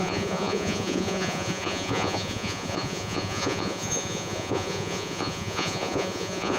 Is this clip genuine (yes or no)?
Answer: no